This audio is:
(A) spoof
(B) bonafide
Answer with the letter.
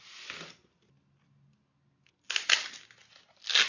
B